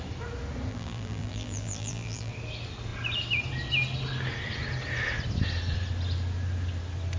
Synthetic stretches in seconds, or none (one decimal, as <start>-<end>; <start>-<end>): 0.7-2.3

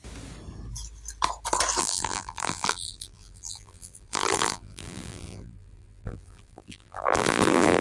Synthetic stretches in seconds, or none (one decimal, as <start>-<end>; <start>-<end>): 1.8-7.8

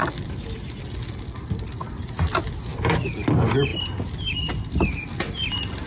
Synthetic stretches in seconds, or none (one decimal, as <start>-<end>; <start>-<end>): none

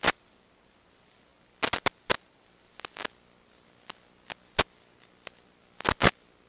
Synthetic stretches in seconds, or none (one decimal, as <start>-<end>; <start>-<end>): none

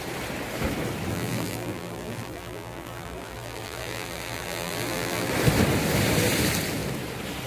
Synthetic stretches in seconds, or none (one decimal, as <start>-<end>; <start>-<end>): 1.1-5.3

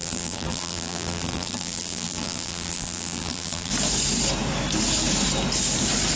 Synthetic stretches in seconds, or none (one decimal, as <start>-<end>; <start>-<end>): 0.0-3.7

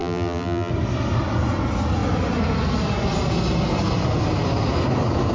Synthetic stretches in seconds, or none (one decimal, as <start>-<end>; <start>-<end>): 0.0-0.7